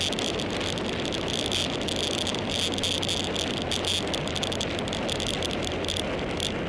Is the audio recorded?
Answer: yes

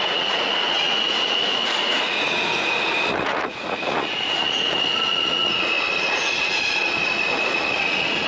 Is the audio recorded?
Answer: no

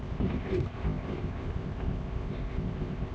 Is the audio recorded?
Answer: no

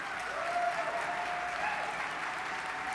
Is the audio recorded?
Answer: yes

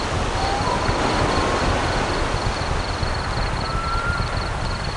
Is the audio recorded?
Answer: yes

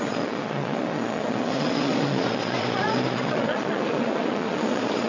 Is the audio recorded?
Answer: no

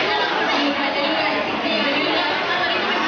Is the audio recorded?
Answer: yes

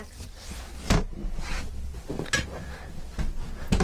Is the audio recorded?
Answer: yes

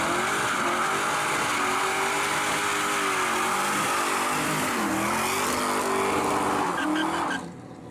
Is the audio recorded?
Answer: yes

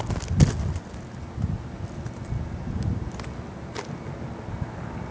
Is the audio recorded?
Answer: yes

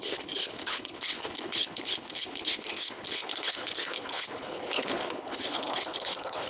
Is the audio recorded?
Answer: no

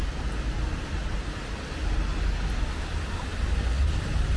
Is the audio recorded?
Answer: yes